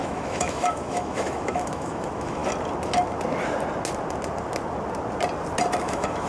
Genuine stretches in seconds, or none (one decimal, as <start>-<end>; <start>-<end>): 2.4-5.8